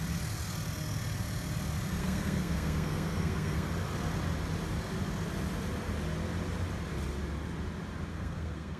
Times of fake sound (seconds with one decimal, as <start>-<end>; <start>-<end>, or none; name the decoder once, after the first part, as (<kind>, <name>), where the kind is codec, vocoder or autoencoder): 2.0-3.7 (codec, SNAC); 8.1-8.8